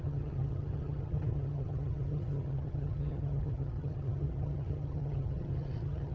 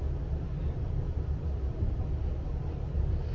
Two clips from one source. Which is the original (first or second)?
second